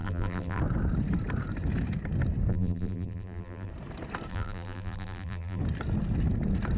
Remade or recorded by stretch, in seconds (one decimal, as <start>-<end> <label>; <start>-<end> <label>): 0.0-0.6 remade; 0.6-2.5 recorded; 2.5-3.7 remade; 3.7-4.3 recorded; 4.3-5.6 remade; 5.6-6.8 recorded